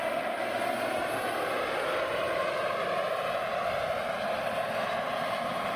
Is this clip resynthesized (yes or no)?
no